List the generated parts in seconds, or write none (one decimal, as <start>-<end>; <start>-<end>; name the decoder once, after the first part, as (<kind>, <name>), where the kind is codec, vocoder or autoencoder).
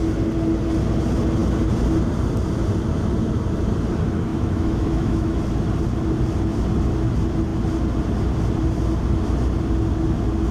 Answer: 4.3-5.4 (autoencoder, DAC-VAE)